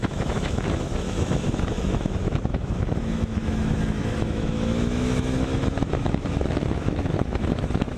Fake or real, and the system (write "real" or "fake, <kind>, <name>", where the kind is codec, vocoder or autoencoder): fake, autoencoder, DAC-VAE